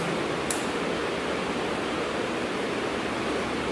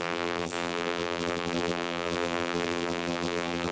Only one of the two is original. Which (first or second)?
first